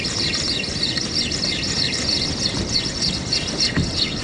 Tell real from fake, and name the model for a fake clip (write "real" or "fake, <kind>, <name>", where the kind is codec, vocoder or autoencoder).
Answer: real